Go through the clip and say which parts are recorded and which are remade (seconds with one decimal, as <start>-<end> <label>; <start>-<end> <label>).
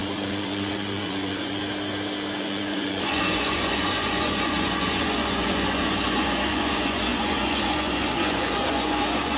0.0-1.6 remade; 1.6-2.4 recorded; 2.4-9.4 remade